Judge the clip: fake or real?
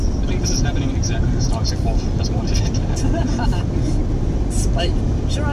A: real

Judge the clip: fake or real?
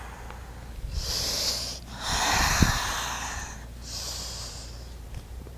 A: fake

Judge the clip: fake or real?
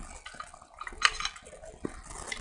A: real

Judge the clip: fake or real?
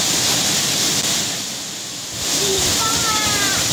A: fake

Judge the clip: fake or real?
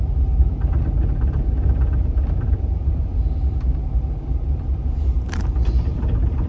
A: fake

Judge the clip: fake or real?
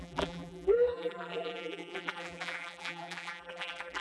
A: fake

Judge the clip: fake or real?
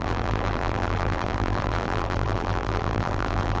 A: fake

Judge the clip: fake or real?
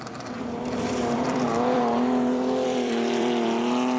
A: fake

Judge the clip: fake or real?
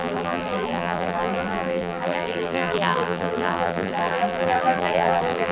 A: fake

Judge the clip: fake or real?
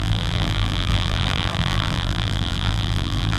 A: fake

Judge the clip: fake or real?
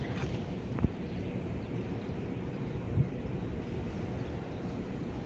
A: fake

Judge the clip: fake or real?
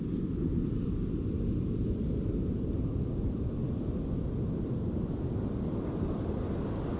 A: real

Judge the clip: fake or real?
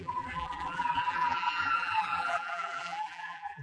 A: fake